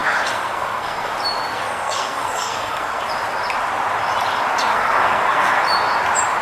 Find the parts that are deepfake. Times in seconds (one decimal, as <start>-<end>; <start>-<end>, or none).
0.0-1.1; 1.5-3.0; 4.7-5.6

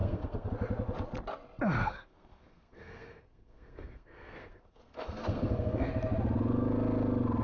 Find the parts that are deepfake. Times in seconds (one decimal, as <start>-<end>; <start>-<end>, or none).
0.0-0.5; 1.8-5.9